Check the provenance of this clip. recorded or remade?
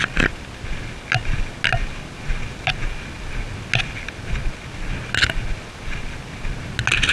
recorded